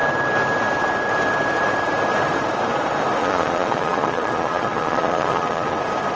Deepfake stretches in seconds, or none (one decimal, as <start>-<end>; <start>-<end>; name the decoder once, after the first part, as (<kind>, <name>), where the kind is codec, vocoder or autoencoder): 3.2-5.8 (vocoder, Vocos)